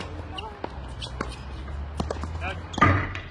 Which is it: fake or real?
real